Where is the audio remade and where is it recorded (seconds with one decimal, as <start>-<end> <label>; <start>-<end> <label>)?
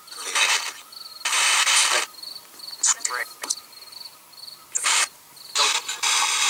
0.0-6.5 recorded